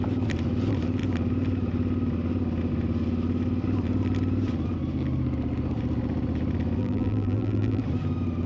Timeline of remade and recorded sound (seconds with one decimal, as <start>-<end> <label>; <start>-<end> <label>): 0.0-6.8 recorded; 6.8-7.8 remade; 7.8-8.5 recorded